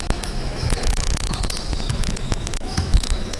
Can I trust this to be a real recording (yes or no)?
no